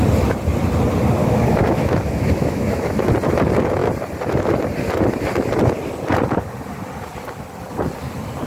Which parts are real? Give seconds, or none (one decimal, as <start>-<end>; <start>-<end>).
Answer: 0.0-1.2; 3.1-8.5